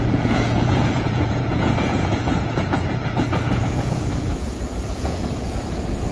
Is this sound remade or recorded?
remade